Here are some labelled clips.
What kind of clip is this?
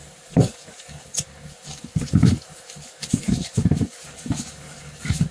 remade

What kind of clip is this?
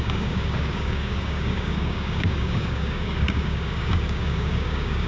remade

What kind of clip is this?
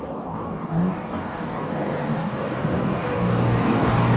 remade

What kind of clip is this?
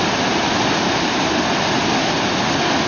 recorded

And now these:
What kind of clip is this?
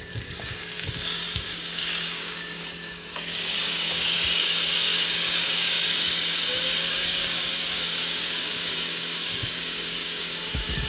remade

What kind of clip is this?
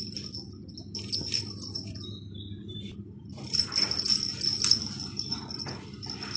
recorded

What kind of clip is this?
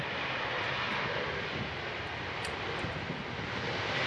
recorded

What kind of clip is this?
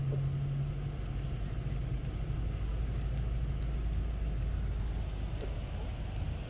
recorded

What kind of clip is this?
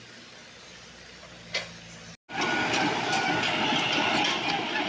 recorded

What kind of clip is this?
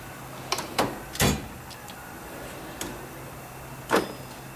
recorded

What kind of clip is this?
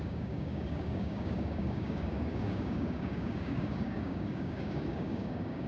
remade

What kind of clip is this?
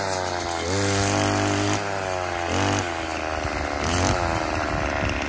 recorded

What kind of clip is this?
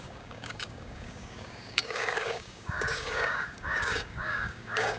remade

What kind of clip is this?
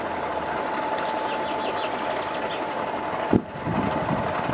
recorded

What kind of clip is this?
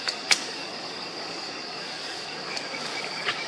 remade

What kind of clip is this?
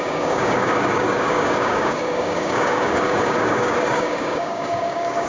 remade